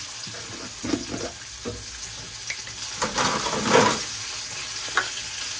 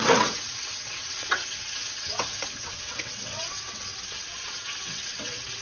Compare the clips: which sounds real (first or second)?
first